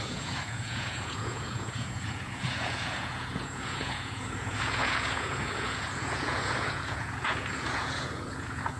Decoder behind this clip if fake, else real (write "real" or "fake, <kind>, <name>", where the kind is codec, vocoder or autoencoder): fake, vocoder, Vocos